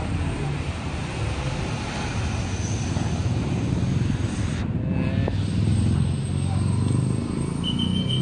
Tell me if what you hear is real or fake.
real